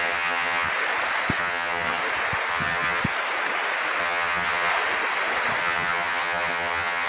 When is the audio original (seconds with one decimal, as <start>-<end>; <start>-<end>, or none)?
0.7-1.4; 2.0-2.5; 3.0-4.0; 4.7-5.6